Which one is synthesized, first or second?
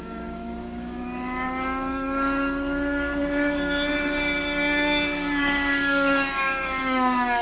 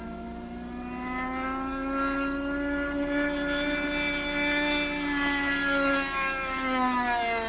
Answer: first